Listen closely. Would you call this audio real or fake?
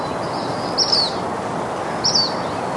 real